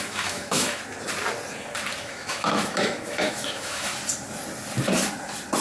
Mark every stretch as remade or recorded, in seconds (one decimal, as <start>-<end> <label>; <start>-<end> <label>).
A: 0.0-0.8 remade; 0.8-2.0 recorded; 2.0-3.9 remade; 3.9-5.6 recorded